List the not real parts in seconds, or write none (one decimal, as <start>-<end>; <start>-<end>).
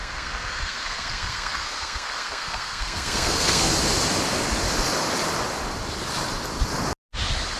0.0-3.7